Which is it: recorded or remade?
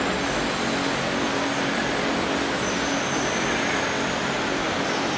recorded